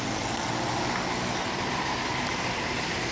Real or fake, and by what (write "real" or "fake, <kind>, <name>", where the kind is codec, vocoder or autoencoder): real